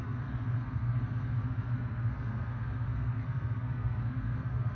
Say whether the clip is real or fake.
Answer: fake